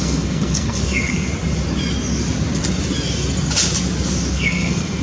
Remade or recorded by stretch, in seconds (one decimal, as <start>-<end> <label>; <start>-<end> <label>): 0.0-1.3 remade; 1.3-4.3 recorded; 4.3-5.0 remade